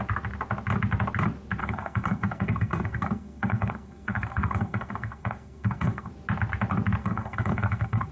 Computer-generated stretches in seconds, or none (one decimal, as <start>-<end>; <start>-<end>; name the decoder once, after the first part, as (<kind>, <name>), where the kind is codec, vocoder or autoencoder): 1.6-6.1 (codec, SNAC); 7.0-8.1